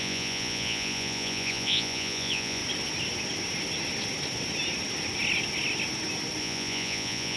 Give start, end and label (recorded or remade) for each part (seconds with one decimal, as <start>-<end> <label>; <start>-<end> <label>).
0.0-2.6 remade; 2.6-6.4 recorded; 6.4-7.4 remade